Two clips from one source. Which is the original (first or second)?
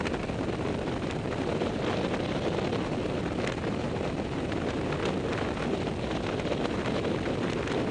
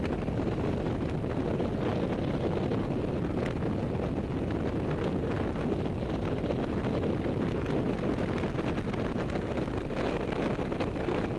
second